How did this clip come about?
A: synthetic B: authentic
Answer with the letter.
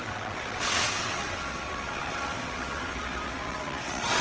A